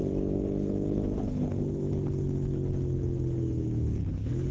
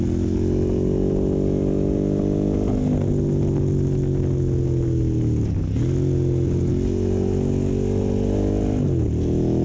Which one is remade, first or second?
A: first